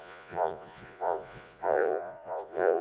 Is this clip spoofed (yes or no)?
yes